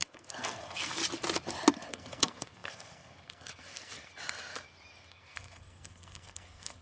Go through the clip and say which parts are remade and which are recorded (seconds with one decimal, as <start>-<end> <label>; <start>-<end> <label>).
0.0-1.0 remade; 1.0-1.9 recorded; 1.9-4.1 remade; 4.1-5.1 recorded; 5.1-6.8 remade